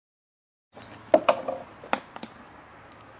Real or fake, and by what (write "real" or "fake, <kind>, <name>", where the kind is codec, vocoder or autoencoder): real